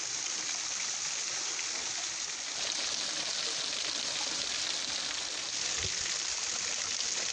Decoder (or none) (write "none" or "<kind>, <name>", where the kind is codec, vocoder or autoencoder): none